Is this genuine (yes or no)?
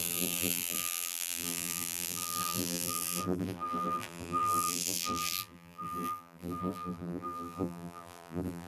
no